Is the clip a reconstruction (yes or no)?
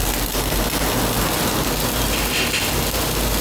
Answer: no